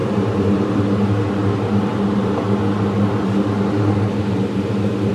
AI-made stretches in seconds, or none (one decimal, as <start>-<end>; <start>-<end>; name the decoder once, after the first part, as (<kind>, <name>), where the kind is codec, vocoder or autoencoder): 0.0-0.8 (vocoder, BigVGAN v2)

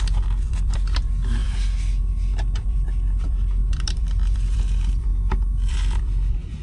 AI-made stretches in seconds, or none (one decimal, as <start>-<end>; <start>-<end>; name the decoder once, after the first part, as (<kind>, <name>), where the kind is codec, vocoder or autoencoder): 0.0-5.1 (vocoder, BigVGAN v2); 5.7-6.6

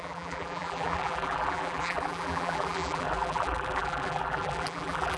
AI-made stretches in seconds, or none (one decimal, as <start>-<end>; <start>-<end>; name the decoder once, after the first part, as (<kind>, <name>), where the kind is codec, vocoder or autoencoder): 0.0-5.2 (vocoder, BigVGAN v2)

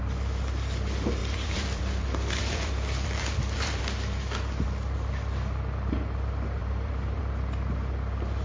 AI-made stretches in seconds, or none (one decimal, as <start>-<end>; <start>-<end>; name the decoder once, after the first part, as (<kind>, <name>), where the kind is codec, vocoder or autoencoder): 1.2-3.8 (vocoder, BigVGAN v2); 6.6-7.2